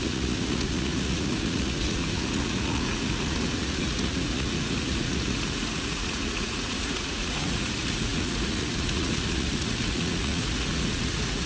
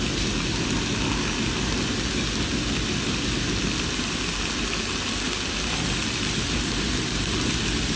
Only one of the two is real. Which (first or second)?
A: second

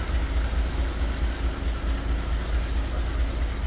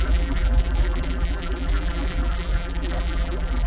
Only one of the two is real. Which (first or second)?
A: first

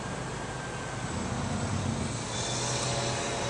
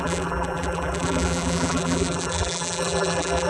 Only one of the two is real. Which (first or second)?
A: first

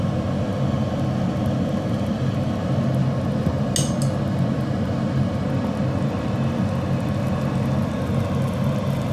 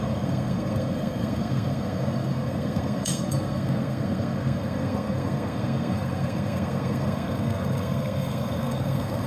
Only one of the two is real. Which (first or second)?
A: first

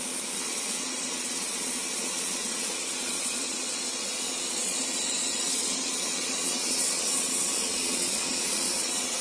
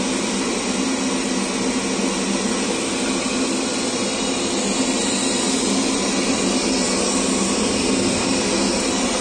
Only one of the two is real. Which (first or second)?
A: second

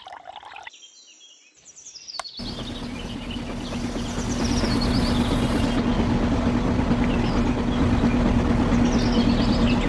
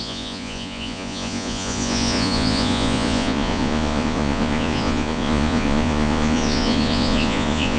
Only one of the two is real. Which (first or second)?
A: first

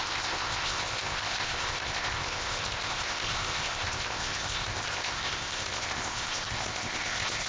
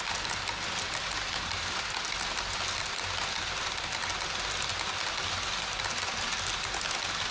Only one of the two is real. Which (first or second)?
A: second